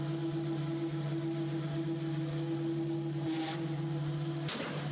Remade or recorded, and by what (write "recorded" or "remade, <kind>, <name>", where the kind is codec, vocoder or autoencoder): recorded